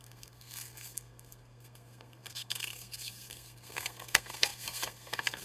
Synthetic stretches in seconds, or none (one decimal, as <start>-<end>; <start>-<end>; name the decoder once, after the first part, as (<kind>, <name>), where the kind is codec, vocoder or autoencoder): 0.0-5.4 (codec, SNAC)